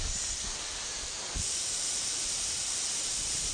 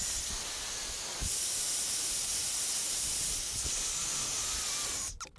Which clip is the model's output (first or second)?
first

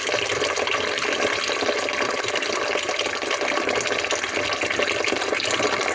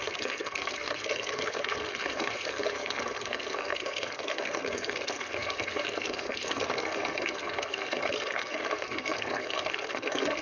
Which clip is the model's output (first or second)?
second